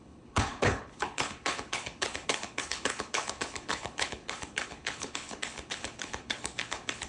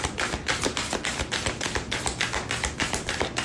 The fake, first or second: first